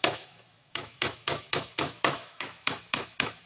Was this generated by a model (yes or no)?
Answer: yes